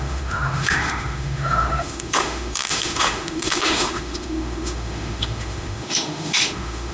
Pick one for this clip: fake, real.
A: fake